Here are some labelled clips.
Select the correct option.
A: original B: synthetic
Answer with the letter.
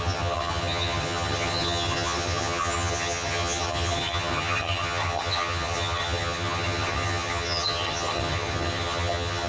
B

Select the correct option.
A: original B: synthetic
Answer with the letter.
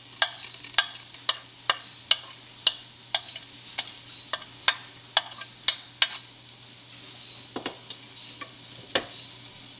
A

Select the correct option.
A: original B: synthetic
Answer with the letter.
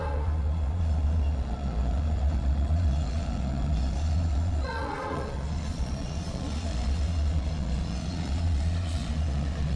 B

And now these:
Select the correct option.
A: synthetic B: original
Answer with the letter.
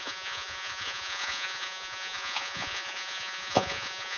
A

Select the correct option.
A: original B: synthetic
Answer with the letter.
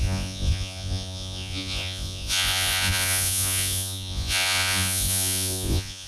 B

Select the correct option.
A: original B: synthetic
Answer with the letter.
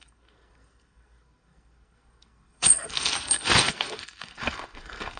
B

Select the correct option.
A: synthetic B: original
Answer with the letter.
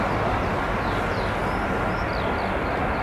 B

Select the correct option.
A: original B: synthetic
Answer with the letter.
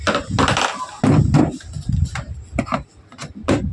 A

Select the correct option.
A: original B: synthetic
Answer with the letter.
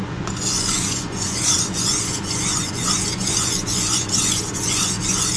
B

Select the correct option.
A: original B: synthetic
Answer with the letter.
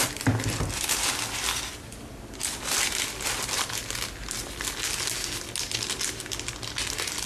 A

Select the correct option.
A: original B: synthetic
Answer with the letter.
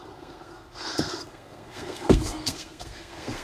B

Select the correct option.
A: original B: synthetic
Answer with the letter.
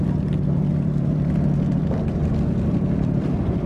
B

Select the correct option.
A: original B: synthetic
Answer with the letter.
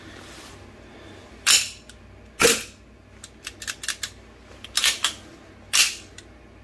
A